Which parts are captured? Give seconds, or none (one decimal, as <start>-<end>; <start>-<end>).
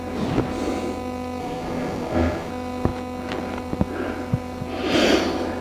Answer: 0.0-1.4; 2.5-5.6